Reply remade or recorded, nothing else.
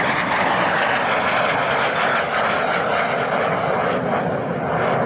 recorded